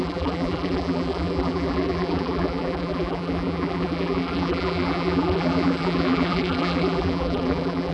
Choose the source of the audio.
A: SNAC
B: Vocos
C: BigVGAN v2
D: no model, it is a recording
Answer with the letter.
C